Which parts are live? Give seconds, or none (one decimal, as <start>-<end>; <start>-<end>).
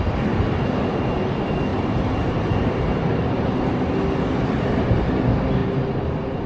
0.0-1.7; 3.8-6.5